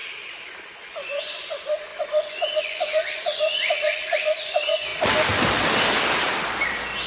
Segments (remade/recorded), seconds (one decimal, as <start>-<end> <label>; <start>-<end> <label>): 0.0-0.7 recorded; 0.7-4.9 remade; 4.9-7.1 recorded